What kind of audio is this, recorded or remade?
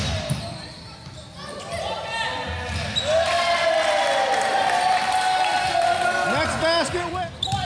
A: recorded